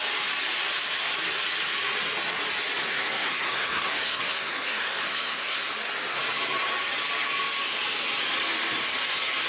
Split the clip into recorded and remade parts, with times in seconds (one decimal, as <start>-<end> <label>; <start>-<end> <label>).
0.0-2.9 recorded; 2.9-5.7 remade; 5.7-9.5 recorded